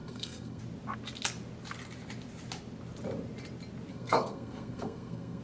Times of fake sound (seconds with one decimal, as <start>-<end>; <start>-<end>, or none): 0.0-0.6; 3.9-5.4